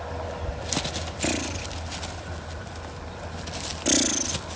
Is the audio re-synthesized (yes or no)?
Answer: no